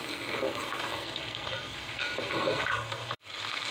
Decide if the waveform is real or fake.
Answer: fake